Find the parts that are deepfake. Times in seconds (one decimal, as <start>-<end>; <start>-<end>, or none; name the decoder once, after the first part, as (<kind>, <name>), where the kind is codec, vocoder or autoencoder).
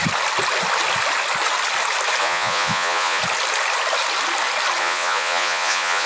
2.2-3.2 (vocoder, Vocos); 4.8-6.1